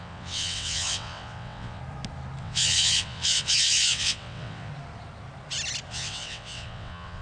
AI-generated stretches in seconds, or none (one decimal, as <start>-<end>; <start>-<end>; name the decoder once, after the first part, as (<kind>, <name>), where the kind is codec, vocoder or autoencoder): 0.0-1.8 (vocoder, WaveNeXt); 2.4-4.7; 5.9-7.2